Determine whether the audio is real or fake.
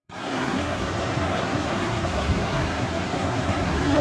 fake